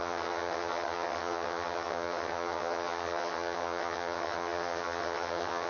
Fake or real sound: fake